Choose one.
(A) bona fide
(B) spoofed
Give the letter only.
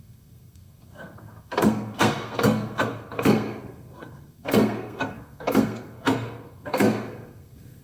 B